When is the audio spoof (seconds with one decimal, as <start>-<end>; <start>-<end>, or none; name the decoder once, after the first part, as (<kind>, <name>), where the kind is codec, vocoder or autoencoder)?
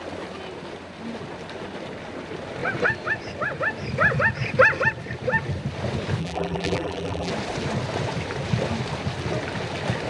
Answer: 6.2-7.3 (vocoder, BigVGAN v2)